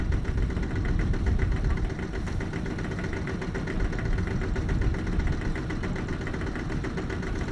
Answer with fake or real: real